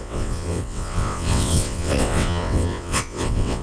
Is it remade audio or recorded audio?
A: remade